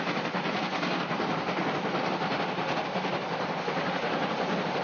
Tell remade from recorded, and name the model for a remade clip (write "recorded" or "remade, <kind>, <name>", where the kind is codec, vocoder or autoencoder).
recorded